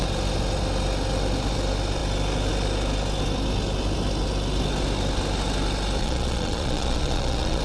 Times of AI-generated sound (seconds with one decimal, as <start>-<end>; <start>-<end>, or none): 6.0-7.6